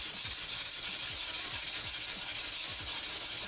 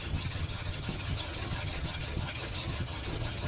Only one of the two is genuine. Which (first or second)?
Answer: first